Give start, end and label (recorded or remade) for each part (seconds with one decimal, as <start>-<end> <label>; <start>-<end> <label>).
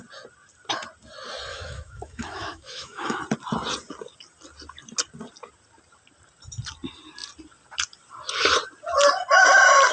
0.0-1.5 recorded; 1.5-3.2 remade; 3.2-9.9 recorded